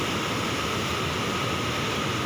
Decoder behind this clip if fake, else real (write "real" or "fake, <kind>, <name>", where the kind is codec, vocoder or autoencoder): real